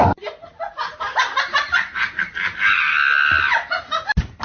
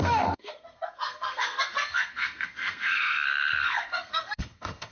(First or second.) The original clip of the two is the first